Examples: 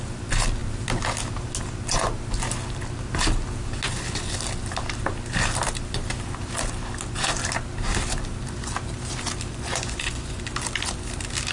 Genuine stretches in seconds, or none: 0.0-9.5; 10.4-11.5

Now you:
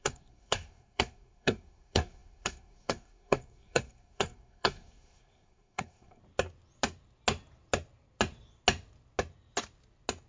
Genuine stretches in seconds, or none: 6.2-10.3

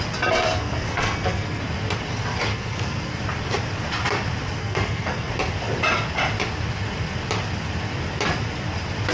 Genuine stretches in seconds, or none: 0.0-0.6; 1.6-2.5; 3.2-4.6; 5.3-9.1

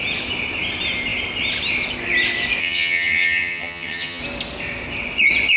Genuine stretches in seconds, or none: 0.0-2.6; 4.2-5.6

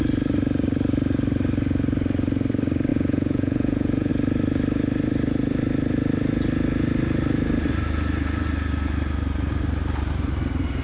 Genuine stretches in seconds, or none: 0.0-2.9; 4.1-10.8

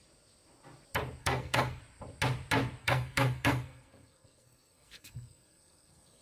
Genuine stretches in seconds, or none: 0.0-1.2; 1.8-2.8